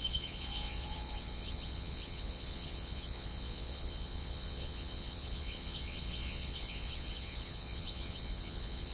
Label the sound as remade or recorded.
remade